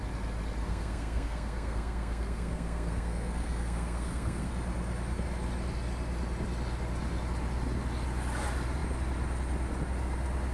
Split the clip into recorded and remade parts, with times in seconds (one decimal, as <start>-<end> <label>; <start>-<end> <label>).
0.0-0.6 recorded; 0.6-4.5 remade; 4.5-10.5 recorded